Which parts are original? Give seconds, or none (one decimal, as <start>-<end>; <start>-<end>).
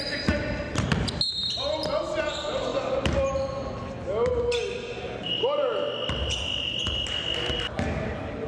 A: 0.0-8.5